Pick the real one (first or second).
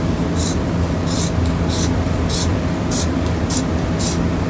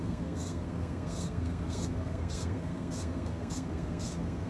first